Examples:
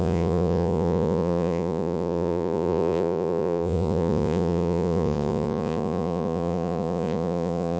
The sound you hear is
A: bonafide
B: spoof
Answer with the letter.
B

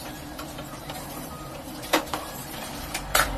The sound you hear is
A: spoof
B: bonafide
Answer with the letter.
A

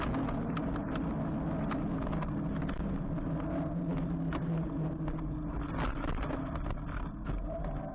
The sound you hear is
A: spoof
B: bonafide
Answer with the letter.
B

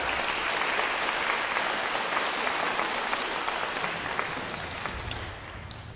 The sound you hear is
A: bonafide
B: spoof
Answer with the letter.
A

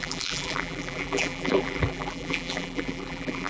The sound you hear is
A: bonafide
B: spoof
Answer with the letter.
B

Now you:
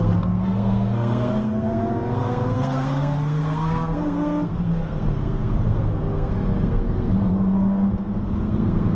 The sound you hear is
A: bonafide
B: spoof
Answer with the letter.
B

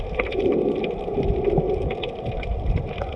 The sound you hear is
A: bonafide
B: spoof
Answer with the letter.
A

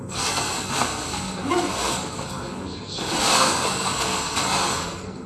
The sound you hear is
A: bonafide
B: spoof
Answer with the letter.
B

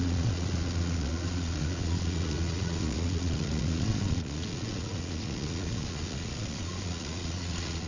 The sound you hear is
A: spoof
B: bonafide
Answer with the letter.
A